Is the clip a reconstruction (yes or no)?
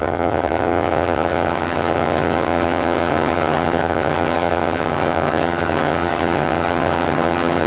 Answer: yes